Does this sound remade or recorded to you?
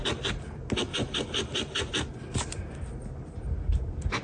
recorded